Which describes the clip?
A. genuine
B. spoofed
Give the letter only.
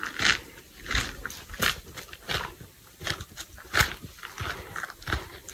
A